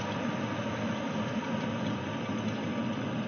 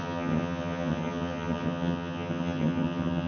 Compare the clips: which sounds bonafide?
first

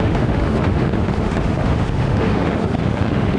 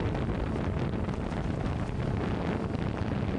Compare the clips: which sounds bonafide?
second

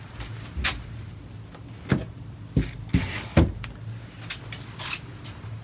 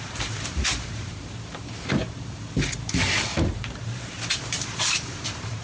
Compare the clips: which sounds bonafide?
first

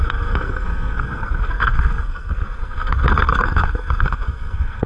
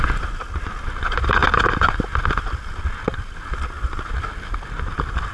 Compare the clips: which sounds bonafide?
second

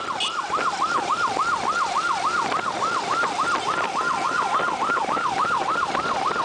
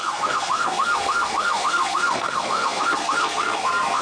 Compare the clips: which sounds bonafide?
first